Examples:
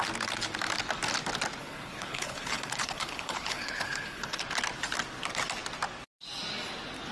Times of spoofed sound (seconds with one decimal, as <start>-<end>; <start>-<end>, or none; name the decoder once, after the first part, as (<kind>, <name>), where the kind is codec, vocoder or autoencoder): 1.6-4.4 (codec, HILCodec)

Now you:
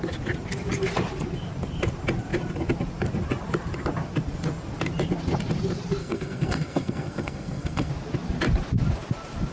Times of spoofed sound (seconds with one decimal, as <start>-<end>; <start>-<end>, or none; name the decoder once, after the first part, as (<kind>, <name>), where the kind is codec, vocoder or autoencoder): 6.0-7.9 (codec, SNAC)

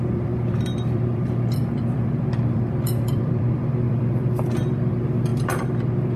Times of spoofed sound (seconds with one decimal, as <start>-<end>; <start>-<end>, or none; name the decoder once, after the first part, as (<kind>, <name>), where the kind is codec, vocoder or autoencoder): 0.0-6.2 (vocoder, BigVGAN v2)